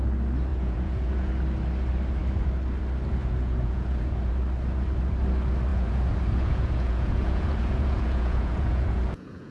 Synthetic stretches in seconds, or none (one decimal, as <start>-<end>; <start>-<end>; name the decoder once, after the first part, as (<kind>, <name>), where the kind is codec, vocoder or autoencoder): 0.5-1.3 (vocoder, Vocos); 3.2-4.3; 5.7-9.5